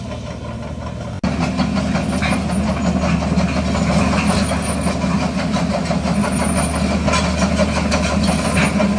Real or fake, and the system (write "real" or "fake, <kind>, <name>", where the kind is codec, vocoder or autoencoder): real